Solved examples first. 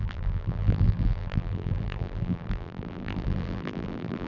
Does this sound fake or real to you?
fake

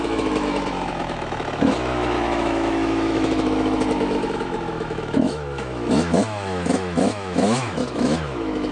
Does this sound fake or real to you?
fake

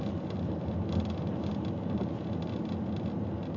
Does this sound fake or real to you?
real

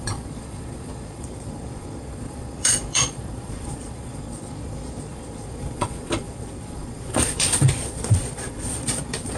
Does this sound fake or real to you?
fake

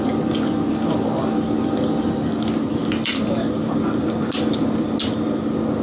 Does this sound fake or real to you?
real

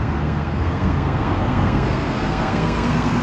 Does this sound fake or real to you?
fake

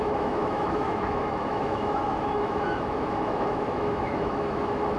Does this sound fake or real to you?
fake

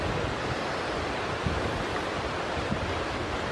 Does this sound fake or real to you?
real